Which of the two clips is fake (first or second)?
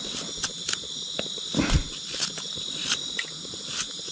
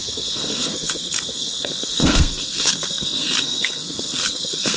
second